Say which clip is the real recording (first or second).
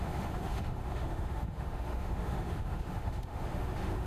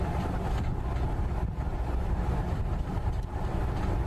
second